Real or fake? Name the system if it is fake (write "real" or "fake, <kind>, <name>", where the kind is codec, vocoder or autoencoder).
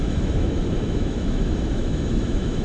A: fake, autoencoder, DAC-VAE